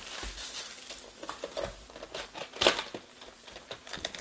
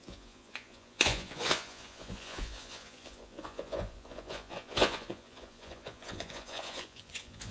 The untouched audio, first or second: first